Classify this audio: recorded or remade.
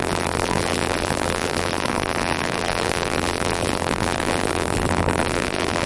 remade